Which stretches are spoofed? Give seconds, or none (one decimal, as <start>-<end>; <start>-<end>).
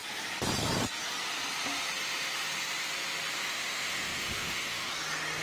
3.5-4.9